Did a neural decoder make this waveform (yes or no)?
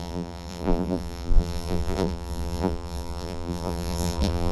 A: yes